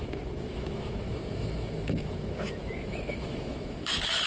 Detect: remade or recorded remade